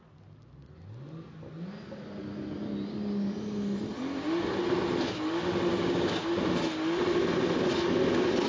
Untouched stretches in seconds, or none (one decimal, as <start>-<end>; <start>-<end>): 0.0-5.7; 6.3-8.5